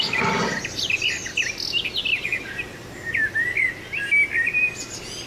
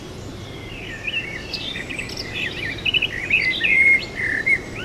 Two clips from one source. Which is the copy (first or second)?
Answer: second